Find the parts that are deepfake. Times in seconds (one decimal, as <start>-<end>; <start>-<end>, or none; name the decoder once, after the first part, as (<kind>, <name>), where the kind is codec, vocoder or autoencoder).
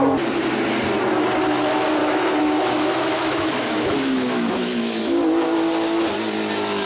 2.0-5.0 (autoencoder, DAC-VAE)